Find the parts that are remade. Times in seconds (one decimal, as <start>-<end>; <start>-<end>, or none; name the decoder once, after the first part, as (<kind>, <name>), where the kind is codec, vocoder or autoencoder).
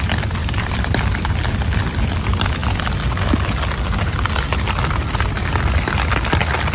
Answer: 0.4-1.0 (vocoder, BigVGAN v2)